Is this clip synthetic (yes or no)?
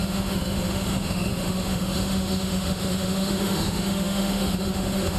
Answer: yes